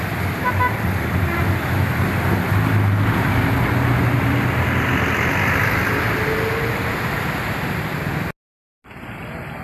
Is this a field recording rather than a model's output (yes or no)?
yes